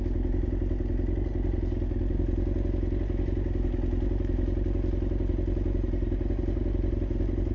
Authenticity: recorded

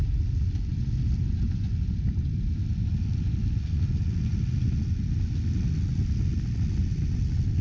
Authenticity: recorded